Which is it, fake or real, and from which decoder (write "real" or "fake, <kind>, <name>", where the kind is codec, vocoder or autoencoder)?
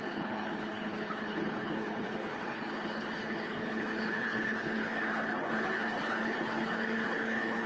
fake, codec, HILCodec